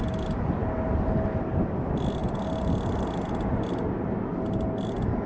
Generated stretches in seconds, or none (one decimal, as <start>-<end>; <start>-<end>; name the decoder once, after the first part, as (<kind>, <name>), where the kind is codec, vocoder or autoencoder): none